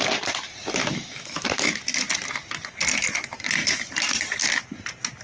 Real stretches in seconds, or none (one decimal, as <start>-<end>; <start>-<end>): 0.0-0.8; 1.8-5.2